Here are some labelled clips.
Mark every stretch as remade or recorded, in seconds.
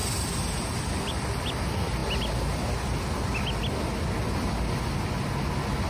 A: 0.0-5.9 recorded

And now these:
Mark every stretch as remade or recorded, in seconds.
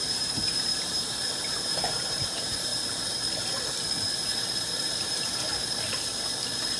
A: 0.0-2.7 remade; 2.7-4.9 recorded; 4.9-5.5 remade; 5.5-6.8 recorded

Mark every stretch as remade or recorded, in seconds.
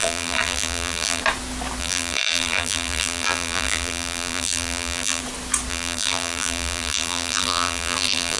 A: 0.0-1.2 remade; 1.2-1.8 recorded; 1.8-5.2 remade; 5.2-5.7 recorded; 5.7-8.4 remade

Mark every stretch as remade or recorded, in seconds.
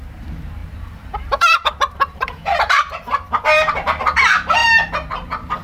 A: 0.0-0.6 recorded; 0.6-4.0 remade; 4.0-5.6 recorded